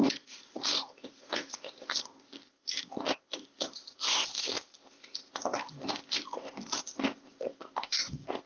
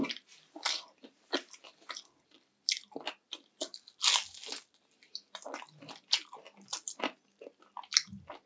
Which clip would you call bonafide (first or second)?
second